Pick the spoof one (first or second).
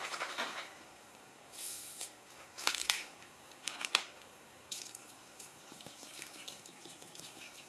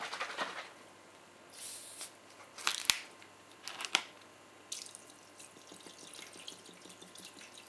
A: first